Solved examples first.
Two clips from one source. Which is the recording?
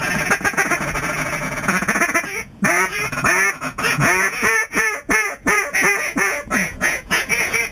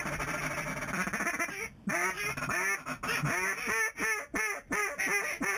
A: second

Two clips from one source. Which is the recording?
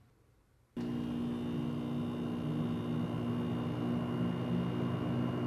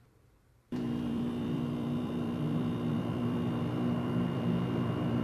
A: first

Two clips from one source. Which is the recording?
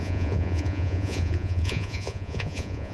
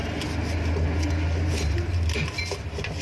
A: second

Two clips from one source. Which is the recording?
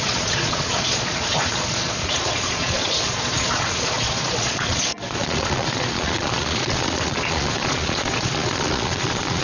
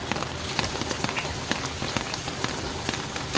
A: second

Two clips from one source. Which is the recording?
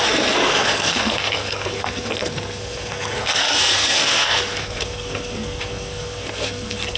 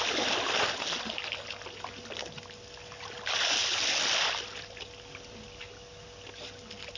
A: second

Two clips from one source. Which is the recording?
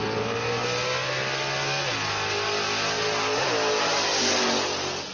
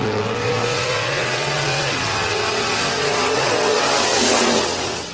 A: first